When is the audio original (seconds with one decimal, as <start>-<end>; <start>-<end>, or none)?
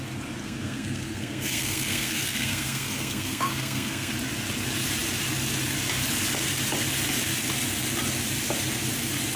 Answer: 0.0-0.4; 4.1-9.4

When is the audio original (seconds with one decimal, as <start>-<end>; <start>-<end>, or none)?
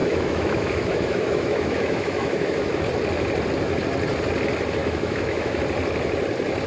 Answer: 2.8-4.8; 5.6-6.7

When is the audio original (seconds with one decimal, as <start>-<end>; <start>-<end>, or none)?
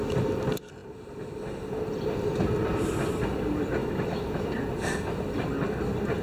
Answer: 0.0-3.8; 4.3-6.2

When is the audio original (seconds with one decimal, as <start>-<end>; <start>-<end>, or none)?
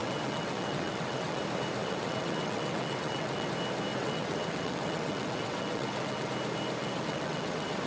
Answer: 1.4-1.8; 3.5-3.9; 6.3-6.8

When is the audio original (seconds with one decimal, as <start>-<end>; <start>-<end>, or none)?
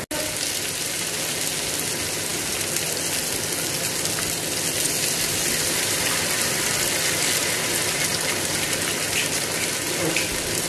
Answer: 0.0-10.7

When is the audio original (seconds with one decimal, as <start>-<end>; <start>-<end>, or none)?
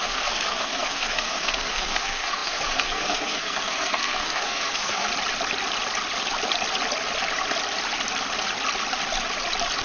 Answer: 5.1-9.8